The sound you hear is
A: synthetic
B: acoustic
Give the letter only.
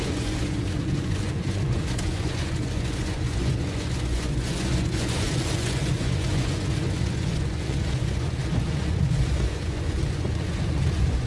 A